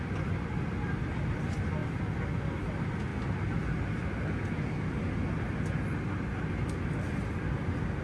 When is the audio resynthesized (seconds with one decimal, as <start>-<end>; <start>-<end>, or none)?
none